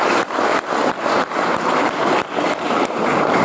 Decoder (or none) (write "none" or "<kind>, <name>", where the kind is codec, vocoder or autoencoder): none